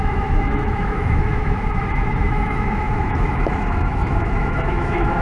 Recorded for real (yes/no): no